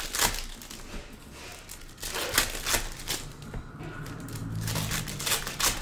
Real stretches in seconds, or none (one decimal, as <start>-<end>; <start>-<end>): 0.0-5.8